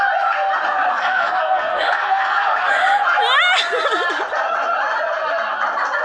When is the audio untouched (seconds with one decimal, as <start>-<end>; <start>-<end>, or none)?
0.0-0.9; 2.7-6.0